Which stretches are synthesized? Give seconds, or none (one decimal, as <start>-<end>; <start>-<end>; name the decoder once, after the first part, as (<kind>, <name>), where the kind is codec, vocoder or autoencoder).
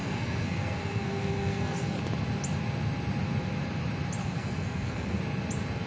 0.0-2.0 (codec, SNAC); 4.2-5.2